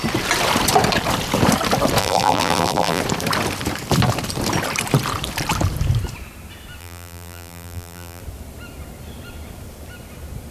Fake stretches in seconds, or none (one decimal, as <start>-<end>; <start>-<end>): 2.0-3.0; 6.8-8.2